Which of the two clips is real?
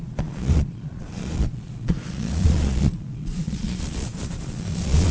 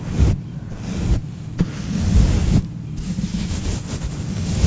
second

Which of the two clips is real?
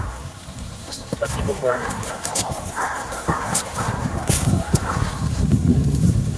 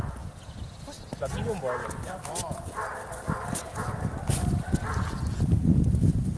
second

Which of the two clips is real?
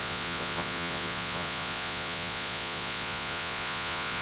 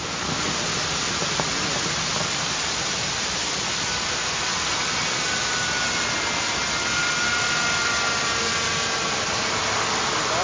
second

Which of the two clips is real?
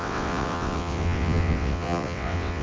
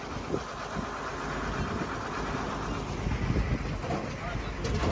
second